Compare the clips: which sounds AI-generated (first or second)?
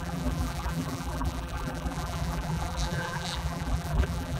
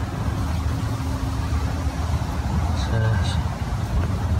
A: first